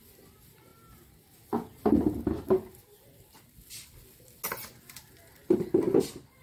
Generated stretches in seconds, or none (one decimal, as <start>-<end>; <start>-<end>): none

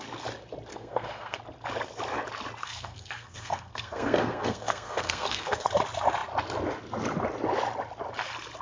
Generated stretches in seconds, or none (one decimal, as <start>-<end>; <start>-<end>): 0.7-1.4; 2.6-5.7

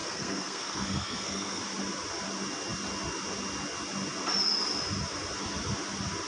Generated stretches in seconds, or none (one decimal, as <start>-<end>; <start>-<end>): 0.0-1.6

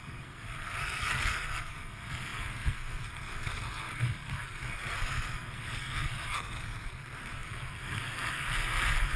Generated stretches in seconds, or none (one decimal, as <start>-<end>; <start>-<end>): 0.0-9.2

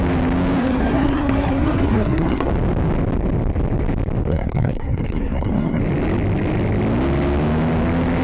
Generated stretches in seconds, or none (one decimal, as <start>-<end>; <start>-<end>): 0.6-2.5; 4.3-5.8

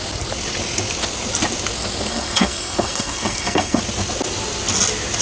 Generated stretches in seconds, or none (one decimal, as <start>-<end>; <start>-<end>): 2.1-3.8